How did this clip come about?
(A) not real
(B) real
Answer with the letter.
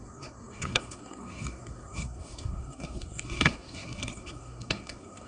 A